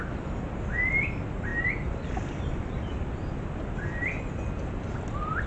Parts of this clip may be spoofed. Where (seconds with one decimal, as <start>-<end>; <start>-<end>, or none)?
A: none